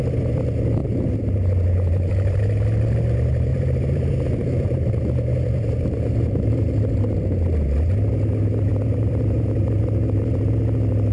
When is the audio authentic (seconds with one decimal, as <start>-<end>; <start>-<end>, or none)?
0.0-0.8; 2.4-3.5; 6.9-8.7; 10.5-11.1